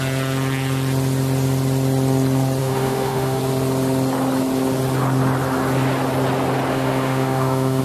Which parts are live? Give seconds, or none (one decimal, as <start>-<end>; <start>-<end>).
0.0-2.6; 3.4-6.7